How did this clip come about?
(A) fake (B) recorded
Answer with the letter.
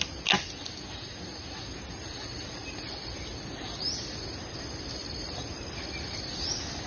B